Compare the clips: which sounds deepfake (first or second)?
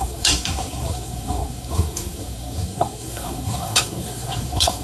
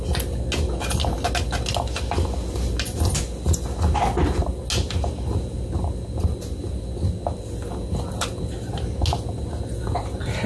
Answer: first